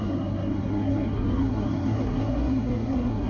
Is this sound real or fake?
fake